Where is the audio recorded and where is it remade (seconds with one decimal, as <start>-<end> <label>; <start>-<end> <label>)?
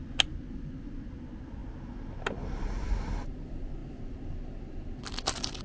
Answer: 0.0-5.6 recorded